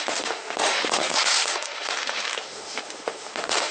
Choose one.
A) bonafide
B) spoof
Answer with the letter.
B